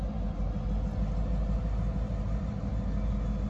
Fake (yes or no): no